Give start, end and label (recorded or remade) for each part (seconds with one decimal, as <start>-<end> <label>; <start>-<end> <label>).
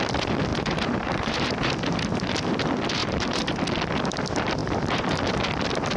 0.0-0.5 recorded; 0.5-2.3 remade; 2.3-3.0 recorded; 3.0-3.6 remade; 3.6-4.6 recorded; 4.6-5.3 remade; 5.3-6.0 recorded